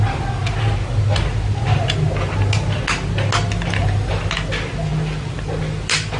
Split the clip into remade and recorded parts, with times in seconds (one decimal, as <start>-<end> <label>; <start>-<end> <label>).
0.0-3.8 recorded; 3.8-4.3 remade; 4.3-6.2 recorded